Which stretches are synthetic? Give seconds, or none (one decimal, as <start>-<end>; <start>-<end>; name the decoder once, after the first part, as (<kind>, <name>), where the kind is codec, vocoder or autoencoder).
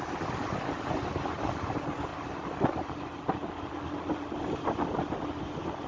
none